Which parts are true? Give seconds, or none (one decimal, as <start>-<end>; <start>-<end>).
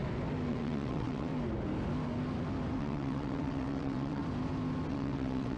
0.0-0.5; 1.3-2.8; 4.2-4.9